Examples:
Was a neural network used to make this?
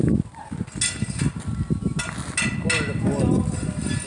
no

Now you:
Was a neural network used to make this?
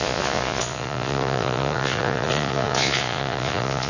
yes